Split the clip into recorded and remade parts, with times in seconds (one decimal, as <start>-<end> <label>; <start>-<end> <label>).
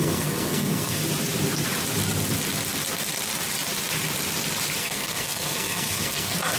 0.0-1.0 remade; 1.0-4.8 recorded; 4.8-6.6 remade